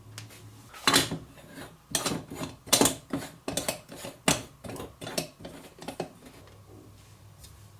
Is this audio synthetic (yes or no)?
no